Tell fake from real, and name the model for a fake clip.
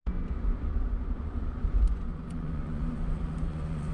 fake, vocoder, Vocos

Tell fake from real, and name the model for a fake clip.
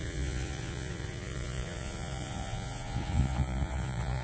fake, vocoder, Vocos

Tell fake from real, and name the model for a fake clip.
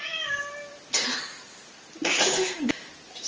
real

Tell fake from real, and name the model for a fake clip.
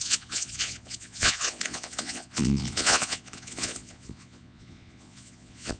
fake, vocoder, Vocos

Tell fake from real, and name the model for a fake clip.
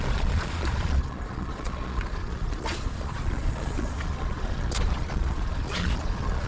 fake, vocoder, Vocos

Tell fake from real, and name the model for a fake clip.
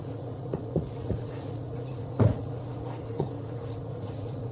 fake, vocoder, Vocos